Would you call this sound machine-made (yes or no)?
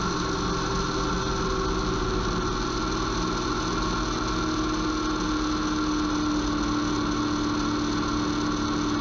no